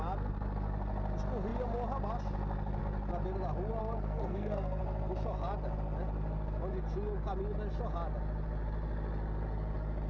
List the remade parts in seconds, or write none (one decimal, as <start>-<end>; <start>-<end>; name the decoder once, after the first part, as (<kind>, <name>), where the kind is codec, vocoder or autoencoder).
3.8-4.8 (codec, SNAC)